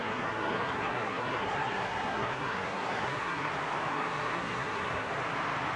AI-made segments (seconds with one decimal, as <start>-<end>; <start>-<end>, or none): 0.0-3.5; 3.9-5.1